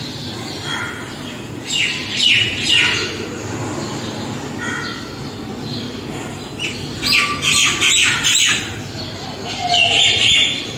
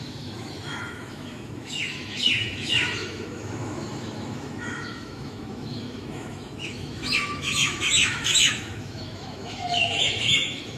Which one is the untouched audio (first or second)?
first